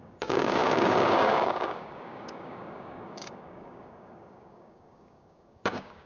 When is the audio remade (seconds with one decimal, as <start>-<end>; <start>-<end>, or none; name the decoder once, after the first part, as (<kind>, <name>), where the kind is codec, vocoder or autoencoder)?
0.0-6.1 (codec, DAC)